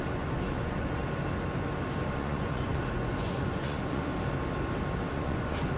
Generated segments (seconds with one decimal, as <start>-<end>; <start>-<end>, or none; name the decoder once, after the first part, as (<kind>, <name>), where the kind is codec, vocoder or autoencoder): 0.0-1.0 (vocoder, Vocos); 2.1-4.1; 5.1-5.8